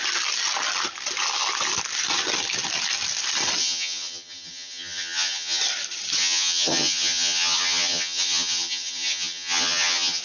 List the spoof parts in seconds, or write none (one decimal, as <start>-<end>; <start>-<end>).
3.6-5.6; 6.2-10.2